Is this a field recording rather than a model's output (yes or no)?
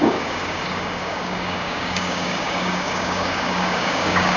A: no